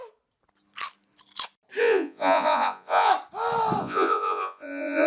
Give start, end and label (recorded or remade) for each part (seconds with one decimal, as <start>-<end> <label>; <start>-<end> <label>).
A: 0.0-1.8 recorded; 1.8-3.1 remade; 3.1-3.8 recorded; 3.8-5.1 remade